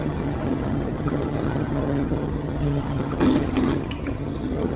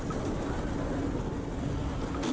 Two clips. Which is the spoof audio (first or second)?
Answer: first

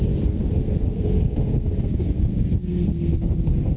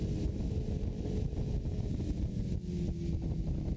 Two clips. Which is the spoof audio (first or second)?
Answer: first